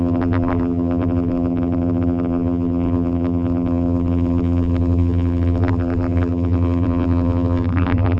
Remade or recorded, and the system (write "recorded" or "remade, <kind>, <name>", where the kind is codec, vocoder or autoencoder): remade, vocoder, BigVGAN v2